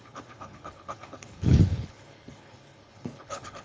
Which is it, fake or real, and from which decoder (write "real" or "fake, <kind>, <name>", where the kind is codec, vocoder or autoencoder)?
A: fake, codec, HILCodec